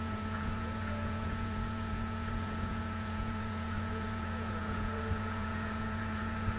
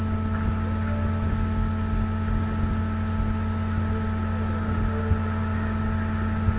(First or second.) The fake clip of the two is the first